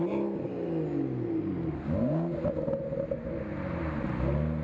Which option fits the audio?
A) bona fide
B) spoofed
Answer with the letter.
A